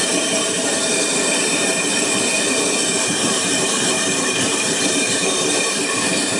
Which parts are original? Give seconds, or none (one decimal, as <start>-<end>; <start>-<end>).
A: 2.1-2.9